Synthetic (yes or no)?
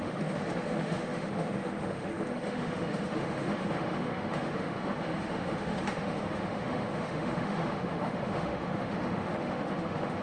yes